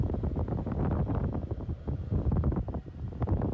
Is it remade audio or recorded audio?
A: recorded